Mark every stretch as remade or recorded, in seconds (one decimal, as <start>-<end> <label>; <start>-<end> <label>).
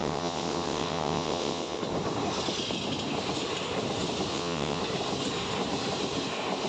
0.0-1.8 remade; 1.8-4.3 recorded; 4.3-4.8 remade; 4.8-6.7 recorded